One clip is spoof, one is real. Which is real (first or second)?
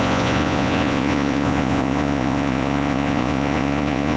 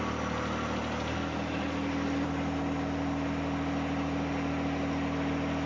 second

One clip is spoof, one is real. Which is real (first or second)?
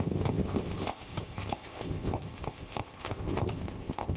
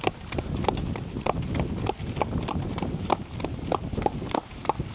second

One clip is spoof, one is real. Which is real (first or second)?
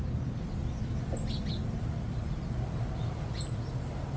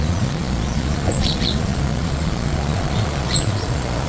first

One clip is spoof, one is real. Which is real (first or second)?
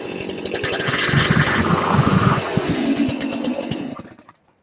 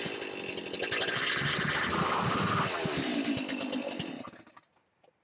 second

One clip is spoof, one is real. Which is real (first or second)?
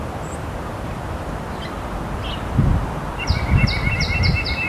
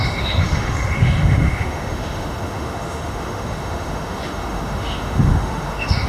first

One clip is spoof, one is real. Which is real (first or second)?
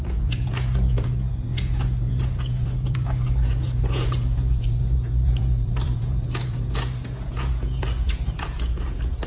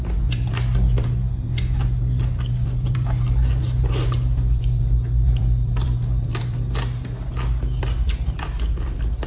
second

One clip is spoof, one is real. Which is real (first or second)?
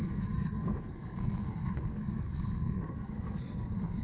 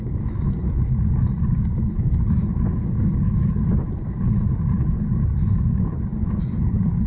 second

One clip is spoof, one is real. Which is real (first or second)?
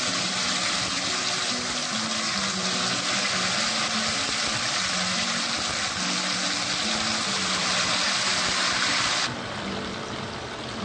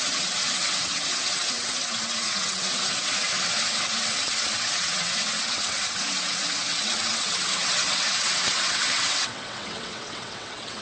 first